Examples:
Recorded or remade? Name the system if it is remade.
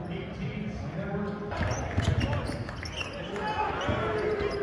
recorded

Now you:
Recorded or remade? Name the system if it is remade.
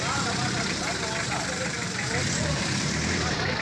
remade, vocoder, BigVGAN v2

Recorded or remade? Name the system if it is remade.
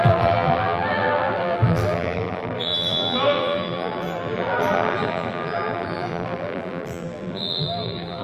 remade, vocoder, BigVGAN v2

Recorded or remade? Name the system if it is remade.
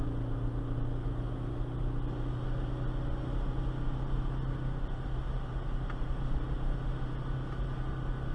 recorded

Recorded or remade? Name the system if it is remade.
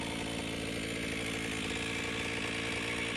recorded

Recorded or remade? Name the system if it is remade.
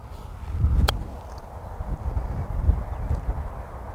recorded